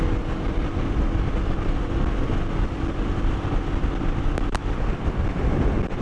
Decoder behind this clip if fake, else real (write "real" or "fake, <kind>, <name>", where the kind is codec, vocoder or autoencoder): real